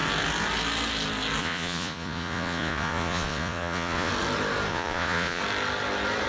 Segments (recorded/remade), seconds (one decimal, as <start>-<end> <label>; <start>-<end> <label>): 0.0-1.4 recorded; 1.4-4.1 remade; 4.1-4.7 recorded; 4.7-5.4 remade; 5.4-6.3 recorded